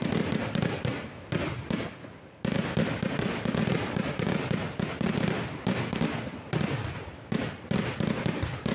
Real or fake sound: real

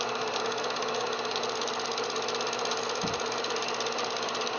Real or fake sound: real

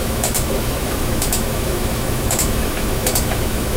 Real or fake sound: fake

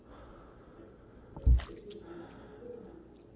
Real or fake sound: real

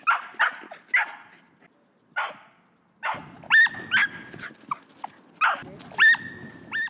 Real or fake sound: real